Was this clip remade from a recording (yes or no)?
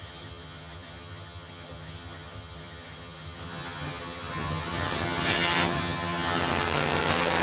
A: yes